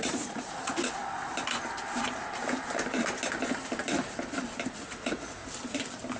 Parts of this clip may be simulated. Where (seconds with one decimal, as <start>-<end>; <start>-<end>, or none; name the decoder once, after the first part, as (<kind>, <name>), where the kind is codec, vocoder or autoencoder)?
0.0-1.0 (vocoder, Vocos); 4.7-5.4